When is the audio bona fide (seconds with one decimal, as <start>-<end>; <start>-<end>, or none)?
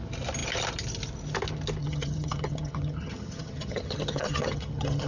0.0-1.8